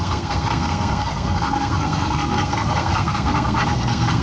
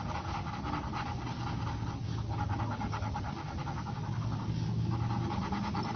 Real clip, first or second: second